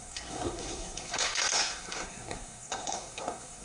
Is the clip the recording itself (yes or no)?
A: no